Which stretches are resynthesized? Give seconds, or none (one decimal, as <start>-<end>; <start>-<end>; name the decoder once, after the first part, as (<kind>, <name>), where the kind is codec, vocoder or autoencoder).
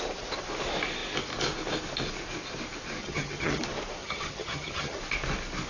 3.0-3.6 (vocoder, HiFi-GAN); 4.0-5.0